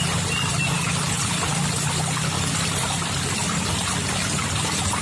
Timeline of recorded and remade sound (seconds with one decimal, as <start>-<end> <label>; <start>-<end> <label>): 0.0-5.0 recorded